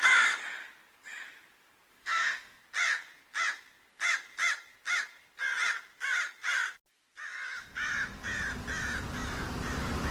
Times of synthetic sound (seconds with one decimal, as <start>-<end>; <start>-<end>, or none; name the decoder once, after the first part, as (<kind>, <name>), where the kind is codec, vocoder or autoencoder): 1.9-2.6 (autoencoder, DAC-VAE)